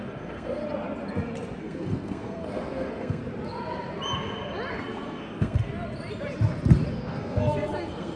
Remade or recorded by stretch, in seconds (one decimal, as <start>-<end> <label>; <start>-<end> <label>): 0.0-0.6 remade; 0.6-1.6 recorded; 1.6-3.2 remade; 3.2-4.7 recorded; 4.7-5.7 remade; 5.7-6.9 recorded; 6.9-8.2 remade